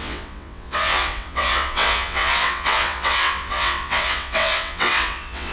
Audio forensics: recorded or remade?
remade